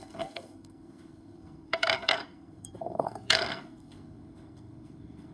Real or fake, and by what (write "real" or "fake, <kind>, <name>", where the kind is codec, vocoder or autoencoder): fake, codec, SNAC